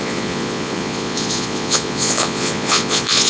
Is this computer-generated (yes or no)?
yes